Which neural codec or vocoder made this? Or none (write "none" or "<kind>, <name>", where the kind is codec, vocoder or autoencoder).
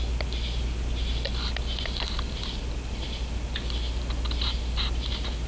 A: none